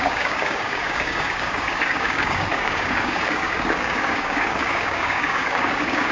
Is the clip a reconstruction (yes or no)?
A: yes